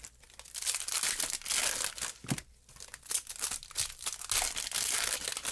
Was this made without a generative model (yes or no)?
yes